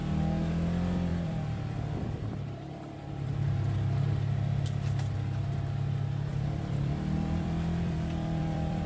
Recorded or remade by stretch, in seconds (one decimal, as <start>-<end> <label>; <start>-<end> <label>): 0.0-1.1 recorded; 1.1-3.3 remade; 3.3-6.3 recorded; 6.3-8.9 remade